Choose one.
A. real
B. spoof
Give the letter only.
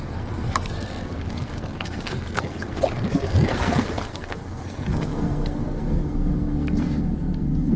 B